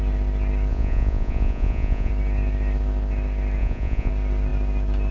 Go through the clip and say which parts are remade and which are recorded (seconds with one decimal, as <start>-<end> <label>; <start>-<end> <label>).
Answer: 0.0-0.7 recorded; 0.7-2.1 remade; 2.1-3.6 recorded; 3.6-4.1 remade; 4.1-5.1 recorded